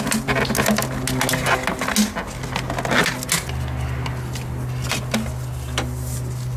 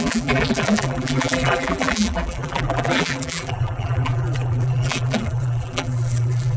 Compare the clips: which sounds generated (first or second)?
second